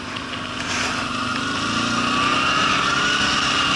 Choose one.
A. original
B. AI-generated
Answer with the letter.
A